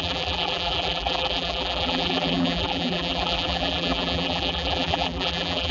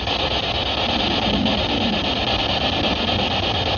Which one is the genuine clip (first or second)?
second